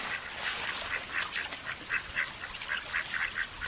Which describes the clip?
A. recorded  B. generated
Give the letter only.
A